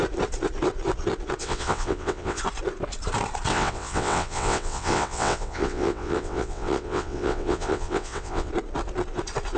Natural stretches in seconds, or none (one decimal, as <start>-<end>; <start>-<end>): 0.0-1.4; 2.4-3.5; 8.5-9.6

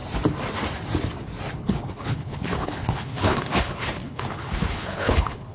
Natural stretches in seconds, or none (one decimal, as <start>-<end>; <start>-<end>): 0.0-1.6